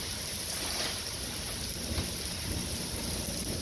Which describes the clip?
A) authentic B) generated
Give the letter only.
A